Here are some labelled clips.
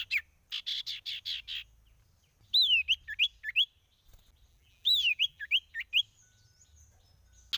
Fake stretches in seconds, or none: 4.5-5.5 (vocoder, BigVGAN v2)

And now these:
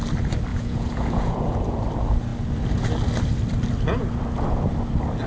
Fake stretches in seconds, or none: 0.5-1.8 (vocoder, Vocos)

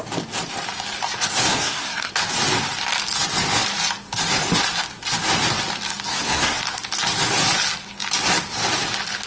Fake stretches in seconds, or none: 1.5-2.1 (codec, SNAC); 6.1-6.6